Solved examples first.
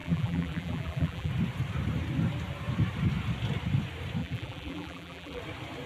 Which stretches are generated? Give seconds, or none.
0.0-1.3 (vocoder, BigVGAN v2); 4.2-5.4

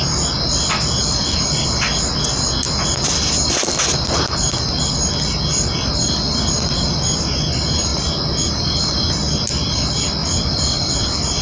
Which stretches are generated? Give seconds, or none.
10.2-11.4 (vocoder, BigVGAN v2)

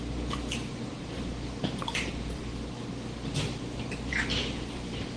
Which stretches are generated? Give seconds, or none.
0.0-2.5 (vocoder, BigVGAN v2); 4.1-5.2

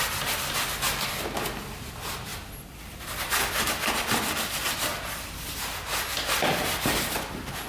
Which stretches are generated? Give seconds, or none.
2.3-5.5 (vocoder, BigVGAN v2)

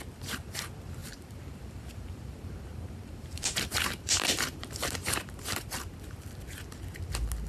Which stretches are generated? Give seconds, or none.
1.0-5.4 (vocoder, BigVGAN v2)

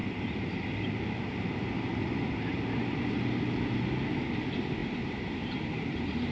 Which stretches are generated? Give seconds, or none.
0.0-3.8 (vocoder, BigVGAN v2); 4.8-6.3

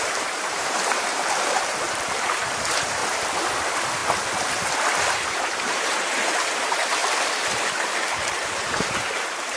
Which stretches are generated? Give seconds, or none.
0.0-3.0 (vocoder, BigVGAN v2); 3.6-4.0; 5.0-7.0; 7.5-9.6